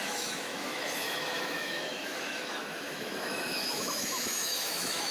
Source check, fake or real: fake